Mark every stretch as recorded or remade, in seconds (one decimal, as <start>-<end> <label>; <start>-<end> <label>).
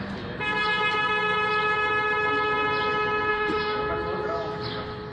0.0-3.3 recorded; 3.3-3.8 remade; 3.8-5.1 recorded